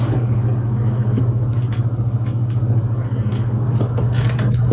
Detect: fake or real fake